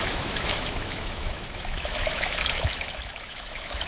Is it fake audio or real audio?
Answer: fake